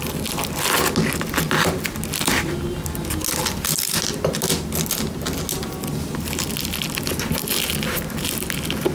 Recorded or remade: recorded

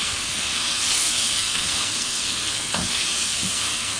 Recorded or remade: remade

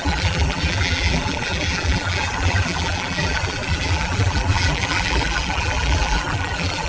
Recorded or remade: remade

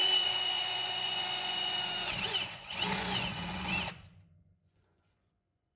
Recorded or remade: remade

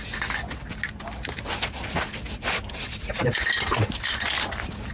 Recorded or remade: recorded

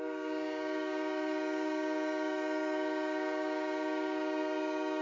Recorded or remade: remade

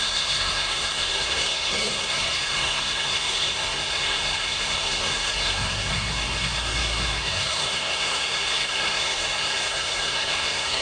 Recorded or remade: remade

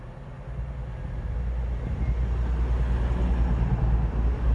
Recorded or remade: recorded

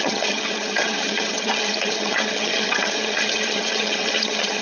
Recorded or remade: remade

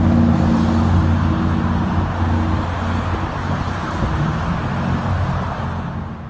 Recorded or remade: recorded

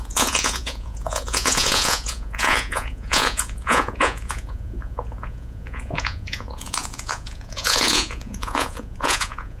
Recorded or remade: remade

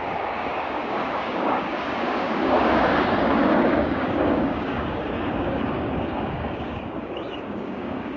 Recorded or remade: remade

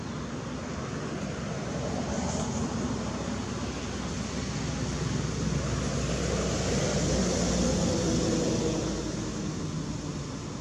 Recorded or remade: recorded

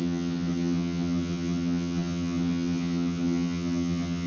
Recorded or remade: remade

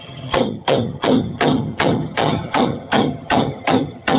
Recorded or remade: remade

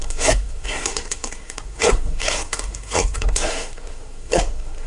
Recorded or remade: remade